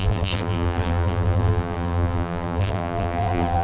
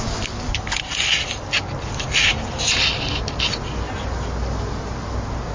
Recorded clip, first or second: second